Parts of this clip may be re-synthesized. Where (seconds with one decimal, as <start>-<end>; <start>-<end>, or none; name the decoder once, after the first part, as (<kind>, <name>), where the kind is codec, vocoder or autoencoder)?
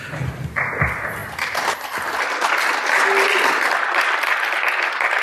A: none